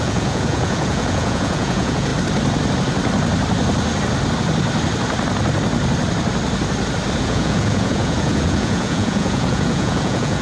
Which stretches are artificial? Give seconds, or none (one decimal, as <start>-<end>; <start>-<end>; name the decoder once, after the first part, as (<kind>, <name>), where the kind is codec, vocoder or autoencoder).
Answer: 0.0-2.1 (vocoder, Vocos); 7.2-10.4